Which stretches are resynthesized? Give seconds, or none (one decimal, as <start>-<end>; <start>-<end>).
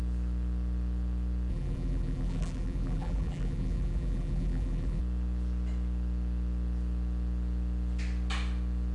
1.5-5.0